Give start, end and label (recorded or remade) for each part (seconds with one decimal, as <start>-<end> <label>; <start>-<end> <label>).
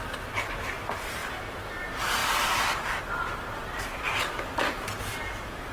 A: 0.0-2.2 recorded; 2.2-3.0 remade; 3.0-5.7 recorded